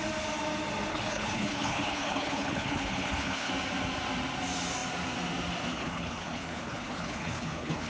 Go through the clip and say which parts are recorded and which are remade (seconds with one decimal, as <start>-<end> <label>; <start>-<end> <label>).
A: 0.0-0.9 recorded; 0.9-3.5 remade; 3.5-5.7 recorded; 5.7-7.9 remade

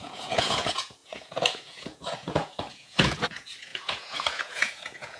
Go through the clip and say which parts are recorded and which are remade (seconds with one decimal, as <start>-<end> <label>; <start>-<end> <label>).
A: 0.0-5.2 remade